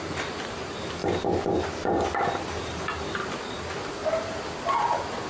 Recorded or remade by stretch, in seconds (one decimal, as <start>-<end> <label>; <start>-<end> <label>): 0.0-5.3 recorded